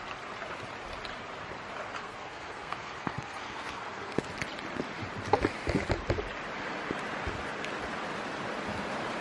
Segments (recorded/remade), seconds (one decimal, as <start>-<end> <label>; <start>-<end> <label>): 0.0-2.0 recorded; 2.0-4.3 remade; 4.3-9.2 recorded